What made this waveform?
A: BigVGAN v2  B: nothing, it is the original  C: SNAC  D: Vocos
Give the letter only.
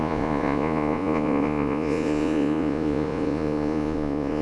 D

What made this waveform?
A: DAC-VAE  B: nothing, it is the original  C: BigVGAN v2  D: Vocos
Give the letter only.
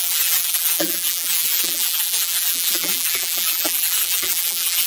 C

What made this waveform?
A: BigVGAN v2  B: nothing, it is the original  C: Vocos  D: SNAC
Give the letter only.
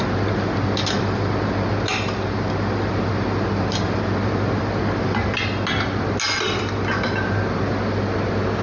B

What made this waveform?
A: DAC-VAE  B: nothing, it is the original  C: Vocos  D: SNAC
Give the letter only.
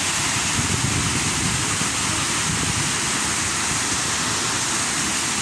B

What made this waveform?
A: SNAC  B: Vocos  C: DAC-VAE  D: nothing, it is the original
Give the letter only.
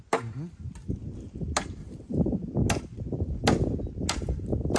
D